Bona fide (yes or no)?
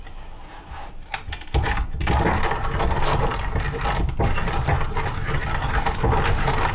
yes